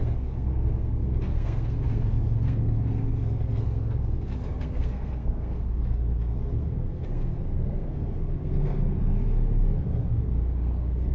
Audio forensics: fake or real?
fake